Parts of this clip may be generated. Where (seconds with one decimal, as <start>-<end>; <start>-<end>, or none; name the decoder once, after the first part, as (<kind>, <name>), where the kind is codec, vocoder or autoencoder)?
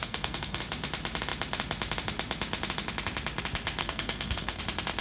0.0-0.6 (codec, SNAC); 3.8-4.6